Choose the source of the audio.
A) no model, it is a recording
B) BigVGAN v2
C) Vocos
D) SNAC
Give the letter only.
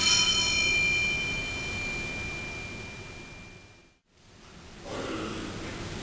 A